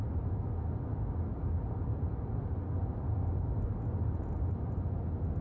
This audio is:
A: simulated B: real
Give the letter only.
B